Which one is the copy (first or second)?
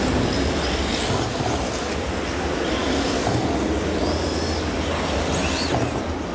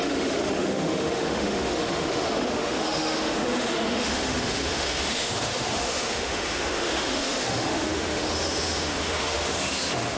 second